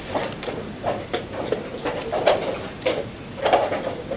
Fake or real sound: real